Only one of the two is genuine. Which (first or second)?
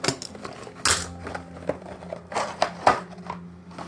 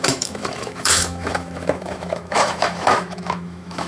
first